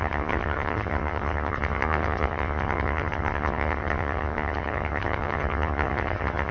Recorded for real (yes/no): no